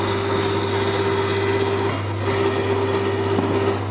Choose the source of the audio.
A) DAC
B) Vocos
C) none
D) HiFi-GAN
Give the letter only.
C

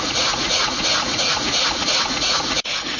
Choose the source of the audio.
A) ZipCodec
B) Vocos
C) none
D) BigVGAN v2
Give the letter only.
B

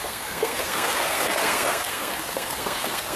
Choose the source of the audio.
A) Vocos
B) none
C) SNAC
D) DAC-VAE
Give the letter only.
C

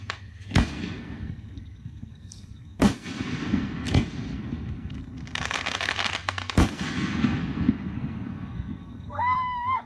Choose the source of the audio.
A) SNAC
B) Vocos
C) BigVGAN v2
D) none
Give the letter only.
A